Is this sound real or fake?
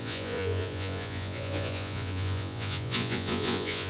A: fake